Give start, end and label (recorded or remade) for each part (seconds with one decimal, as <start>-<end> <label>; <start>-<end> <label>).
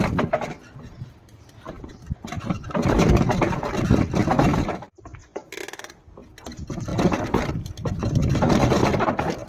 0.0-5.2 recorded; 5.2-5.9 remade; 5.9-6.9 recorded; 6.9-7.5 remade; 7.5-8.8 recorded; 8.8-9.5 remade